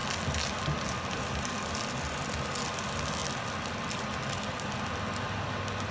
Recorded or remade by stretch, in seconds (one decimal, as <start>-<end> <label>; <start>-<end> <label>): 0.0-5.9 recorded